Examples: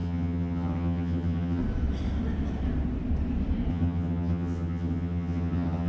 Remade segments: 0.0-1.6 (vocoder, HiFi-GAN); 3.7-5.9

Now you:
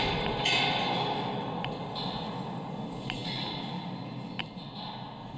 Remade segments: none

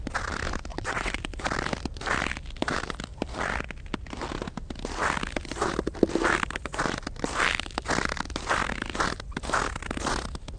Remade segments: 0.7-1.2 (vocoder, WaveNeXt)

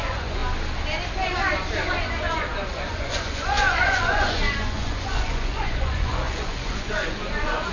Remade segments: 0.0-0.4 (vocoder, Vocos); 2.0-7.7

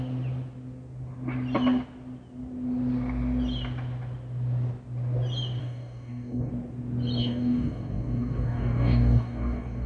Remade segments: 5.6-6.5 (codec, DAC); 7.2-9.9

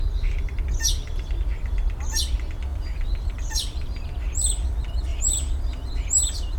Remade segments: 2.7-4.0 (vocoder, BigVGAN v2); 5.1-5.9

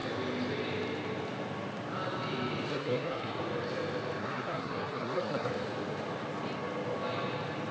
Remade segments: 2.7-3.4 (codec, SNAC); 4.2-5.5